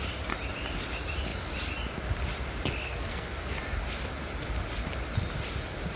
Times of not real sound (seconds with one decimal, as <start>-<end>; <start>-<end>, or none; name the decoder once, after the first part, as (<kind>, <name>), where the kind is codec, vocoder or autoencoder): 2.8-3.6 (codec, SNAC)